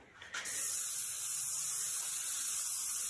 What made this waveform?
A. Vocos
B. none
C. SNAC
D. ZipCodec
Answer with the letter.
B